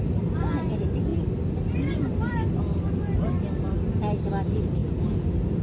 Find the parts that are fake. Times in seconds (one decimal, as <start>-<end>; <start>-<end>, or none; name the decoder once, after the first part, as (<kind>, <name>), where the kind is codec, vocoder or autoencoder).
0.0-4.8 (vocoder, BigVGAN v2)